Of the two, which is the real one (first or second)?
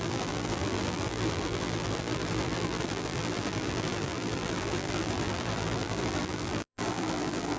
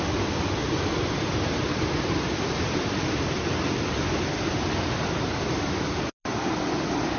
second